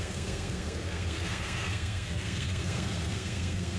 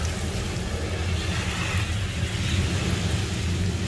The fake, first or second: first